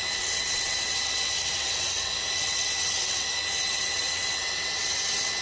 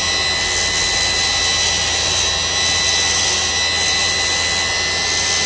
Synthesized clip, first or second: first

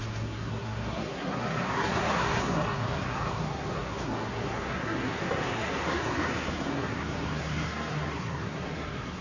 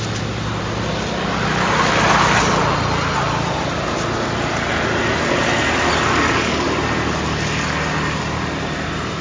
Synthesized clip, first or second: first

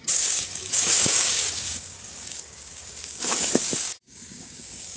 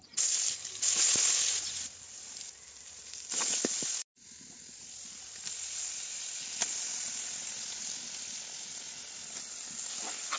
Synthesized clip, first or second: first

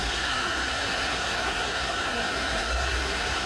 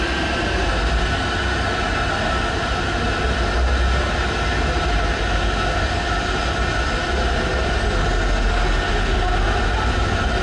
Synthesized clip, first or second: first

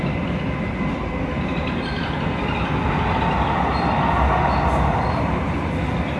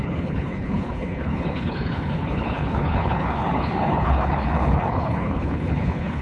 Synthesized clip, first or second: second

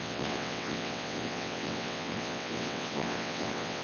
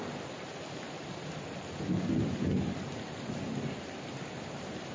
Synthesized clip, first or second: first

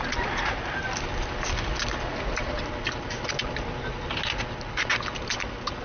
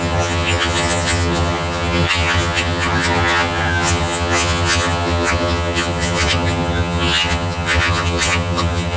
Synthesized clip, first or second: second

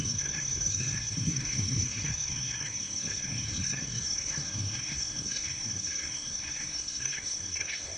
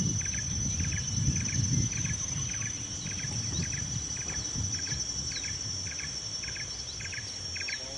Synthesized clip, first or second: first